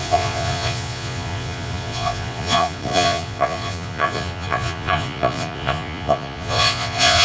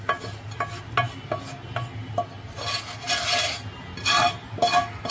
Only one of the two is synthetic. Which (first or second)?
first